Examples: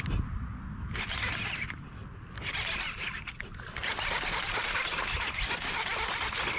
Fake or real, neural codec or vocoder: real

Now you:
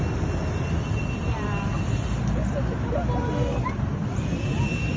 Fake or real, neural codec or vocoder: real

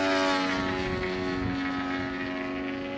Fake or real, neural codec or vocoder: real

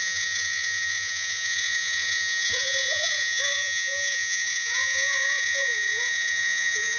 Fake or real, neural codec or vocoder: fake, vocoder, Vocos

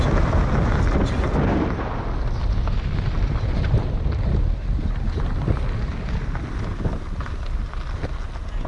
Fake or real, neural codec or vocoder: real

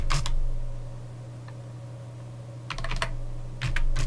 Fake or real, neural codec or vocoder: real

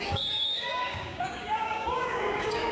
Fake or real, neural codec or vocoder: fake, codec, DAC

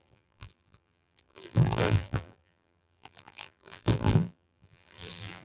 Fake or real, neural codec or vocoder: fake, vocoder, BigVGAN v2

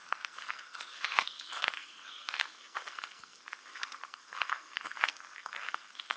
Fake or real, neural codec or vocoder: fake, codec, SNAC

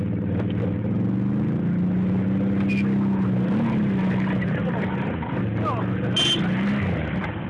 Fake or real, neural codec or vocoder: real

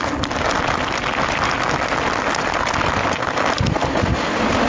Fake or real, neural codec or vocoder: real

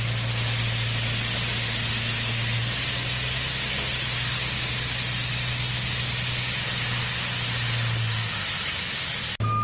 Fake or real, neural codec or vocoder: real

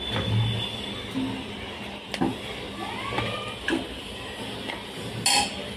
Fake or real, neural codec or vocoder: real